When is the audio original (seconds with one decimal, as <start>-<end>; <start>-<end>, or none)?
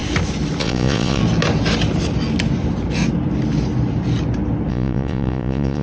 0.0-0.6; 1.2-4.7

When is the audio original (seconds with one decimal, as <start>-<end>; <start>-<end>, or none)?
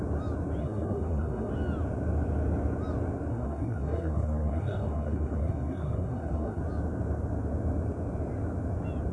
0.0-0.6; 1.5-3.3; 6.6-9.1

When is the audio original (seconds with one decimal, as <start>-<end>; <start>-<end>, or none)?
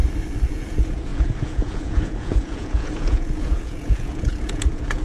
0.0-0.5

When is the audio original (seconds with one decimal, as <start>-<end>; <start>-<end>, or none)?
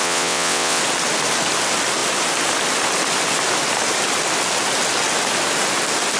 0.8-6.2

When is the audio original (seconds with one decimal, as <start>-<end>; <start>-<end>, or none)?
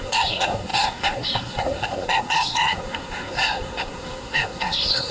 none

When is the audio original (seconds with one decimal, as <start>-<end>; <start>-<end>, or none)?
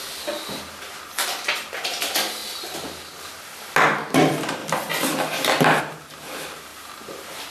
0.0-7.5